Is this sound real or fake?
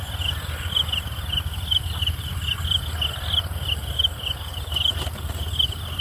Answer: real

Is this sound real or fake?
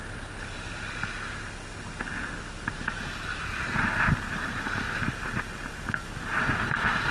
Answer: real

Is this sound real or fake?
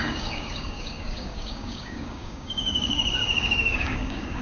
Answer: fake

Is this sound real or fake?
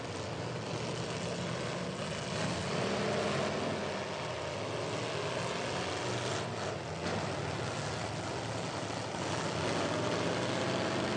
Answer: real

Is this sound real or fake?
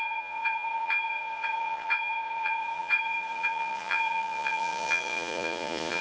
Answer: fake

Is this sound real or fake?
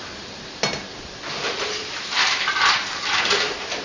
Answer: real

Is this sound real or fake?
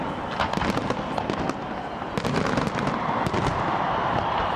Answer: real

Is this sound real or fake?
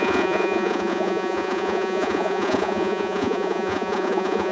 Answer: fake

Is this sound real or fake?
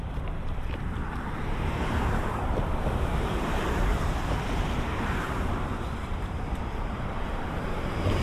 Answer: fake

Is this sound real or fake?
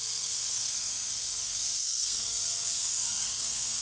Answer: fake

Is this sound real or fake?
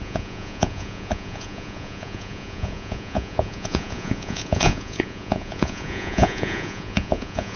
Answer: fake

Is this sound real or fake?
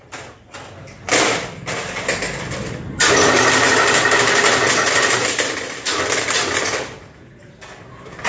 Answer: real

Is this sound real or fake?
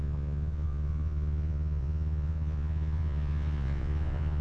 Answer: fake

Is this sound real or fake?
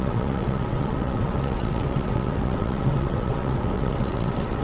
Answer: fake